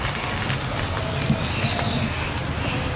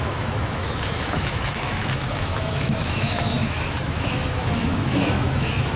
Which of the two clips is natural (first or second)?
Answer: first